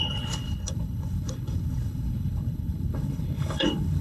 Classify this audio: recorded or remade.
remade